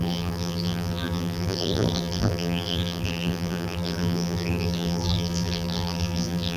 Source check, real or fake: fake